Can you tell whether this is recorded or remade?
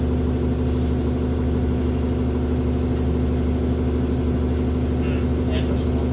recorded